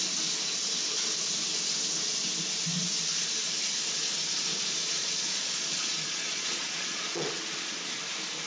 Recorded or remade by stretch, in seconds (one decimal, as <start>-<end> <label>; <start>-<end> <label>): 0.0-4.8 recorded; 4.8-7.9 remade; 7.9-8.5 recorded